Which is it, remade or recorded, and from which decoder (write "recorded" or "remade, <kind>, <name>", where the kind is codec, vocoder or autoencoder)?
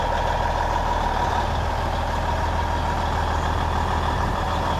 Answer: recorded